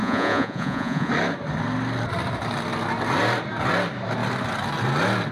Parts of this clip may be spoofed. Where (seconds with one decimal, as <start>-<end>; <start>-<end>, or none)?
0.0-1.1